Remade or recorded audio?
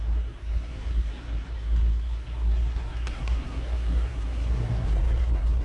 remade